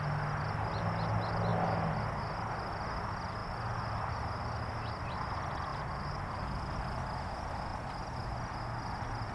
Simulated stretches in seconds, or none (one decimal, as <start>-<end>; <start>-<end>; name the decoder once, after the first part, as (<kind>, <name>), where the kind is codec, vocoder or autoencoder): 5.7-6.4 (vocoder, BigVGAN v2)